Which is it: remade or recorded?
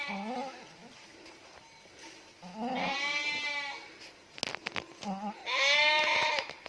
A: recorded